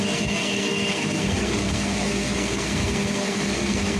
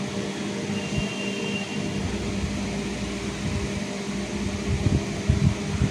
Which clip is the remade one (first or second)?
first